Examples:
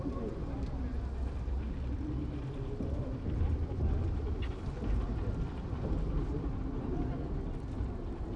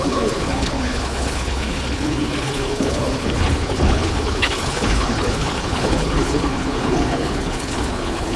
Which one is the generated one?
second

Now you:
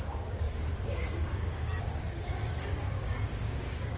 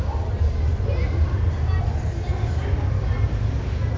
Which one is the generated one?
first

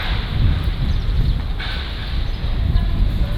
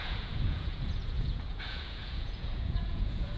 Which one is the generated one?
second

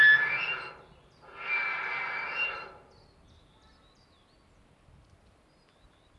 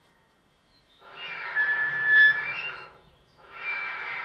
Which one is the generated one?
second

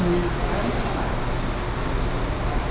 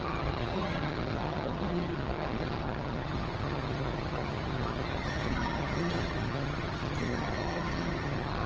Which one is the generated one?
second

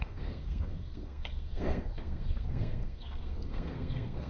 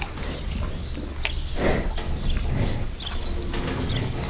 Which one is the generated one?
first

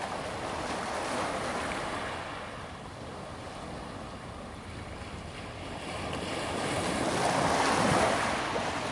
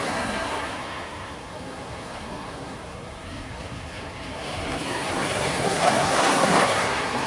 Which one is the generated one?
second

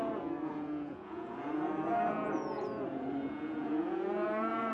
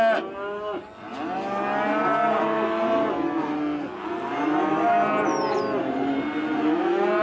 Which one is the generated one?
first